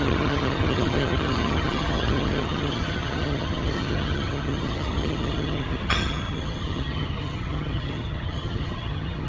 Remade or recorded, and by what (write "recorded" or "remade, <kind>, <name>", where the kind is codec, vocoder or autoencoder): remade, vocoder, HiFi-GAN